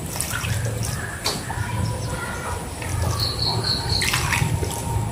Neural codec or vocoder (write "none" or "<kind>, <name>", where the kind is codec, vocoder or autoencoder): none